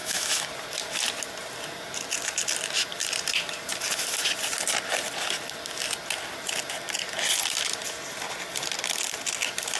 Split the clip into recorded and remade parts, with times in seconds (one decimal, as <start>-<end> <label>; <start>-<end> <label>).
0.0-0.5 remade; 0.5-9.8 recorded